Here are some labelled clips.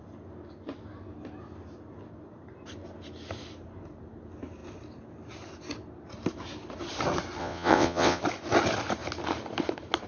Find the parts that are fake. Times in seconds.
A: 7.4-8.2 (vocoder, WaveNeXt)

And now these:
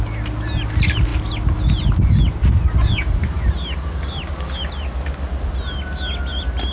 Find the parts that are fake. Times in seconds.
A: none